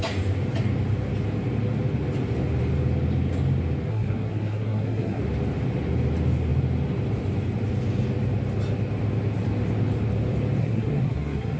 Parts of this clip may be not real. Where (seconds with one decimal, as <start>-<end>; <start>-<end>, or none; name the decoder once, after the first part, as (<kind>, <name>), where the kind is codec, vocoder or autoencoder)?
3.9-5.2 (codec, SNAC); 10.6-11.6